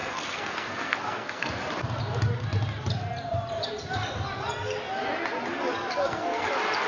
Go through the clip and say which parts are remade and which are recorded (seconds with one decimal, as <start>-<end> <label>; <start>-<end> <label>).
0.0-1.5 remade; 1.5-5.9 recorded; 5.9-6.5 remade; 6.5-6.9 recorded